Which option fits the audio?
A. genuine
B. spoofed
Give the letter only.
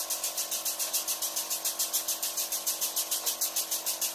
A